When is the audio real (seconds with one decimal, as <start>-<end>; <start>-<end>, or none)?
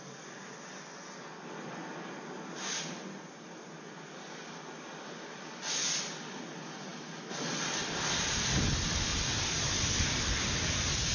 0.0-9.1; 10.3-11.1